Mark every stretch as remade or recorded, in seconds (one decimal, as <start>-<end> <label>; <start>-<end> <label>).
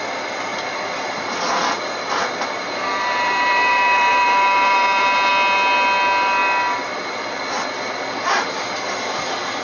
0.0-0.5 recorded; 0.5-5.3 remade; 5.3-9.6 recorded